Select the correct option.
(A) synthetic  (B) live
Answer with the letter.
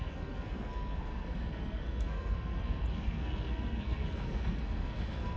A